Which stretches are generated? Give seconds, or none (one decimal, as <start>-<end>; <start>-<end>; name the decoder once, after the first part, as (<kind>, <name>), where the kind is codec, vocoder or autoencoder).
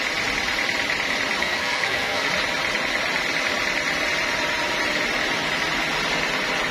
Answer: 1.4-2.3 (codec, SNAC)